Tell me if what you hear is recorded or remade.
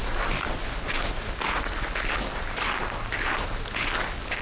recorded